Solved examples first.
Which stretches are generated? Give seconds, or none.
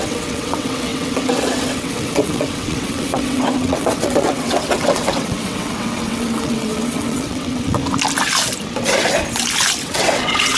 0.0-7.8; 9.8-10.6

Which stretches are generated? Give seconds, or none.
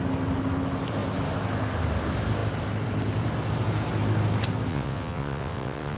4.7-6.0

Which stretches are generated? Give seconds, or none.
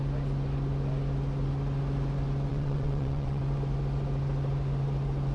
2.5-3.4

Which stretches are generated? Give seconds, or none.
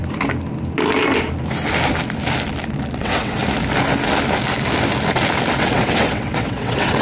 3.0-3.4; 5.5-7.0